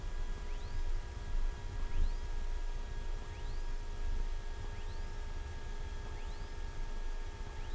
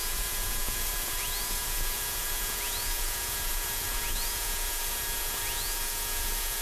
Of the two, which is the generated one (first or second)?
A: second